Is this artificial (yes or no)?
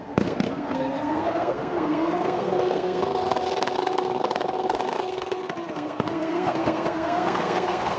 yes